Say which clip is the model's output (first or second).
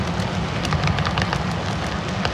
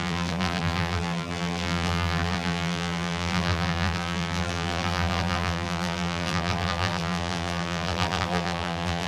second